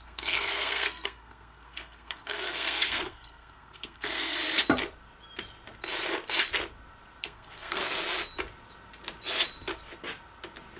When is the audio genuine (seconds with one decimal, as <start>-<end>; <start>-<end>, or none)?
4.4-7.2; 7.8-10.8